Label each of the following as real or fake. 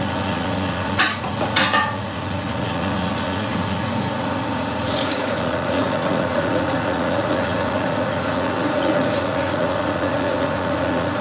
fake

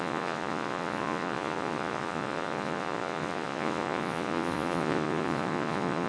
fake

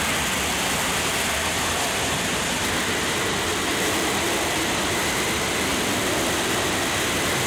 real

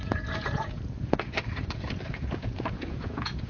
fake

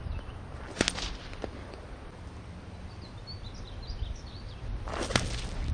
real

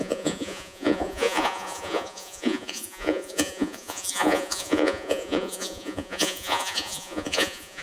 fake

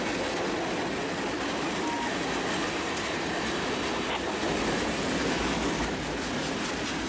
real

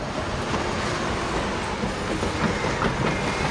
real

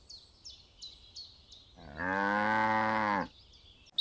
real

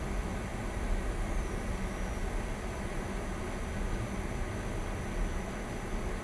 real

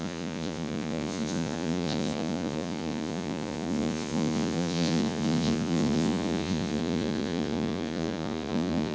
fake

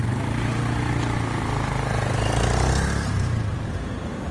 real